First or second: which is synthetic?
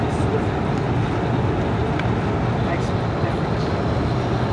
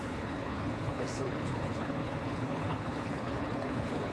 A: second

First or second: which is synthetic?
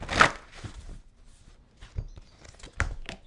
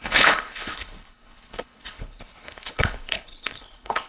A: second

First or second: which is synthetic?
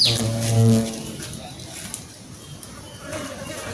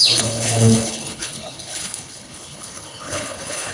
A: second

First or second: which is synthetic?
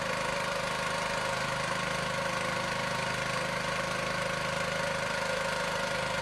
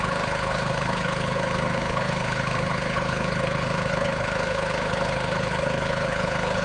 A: second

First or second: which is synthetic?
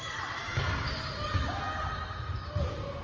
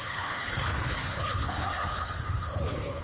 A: second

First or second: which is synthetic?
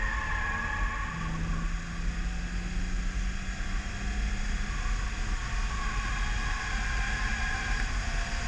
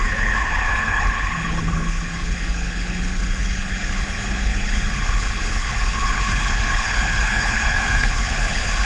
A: second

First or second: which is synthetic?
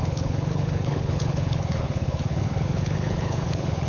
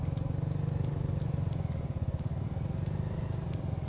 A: first